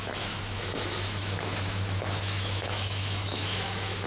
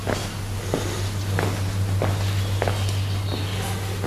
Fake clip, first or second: first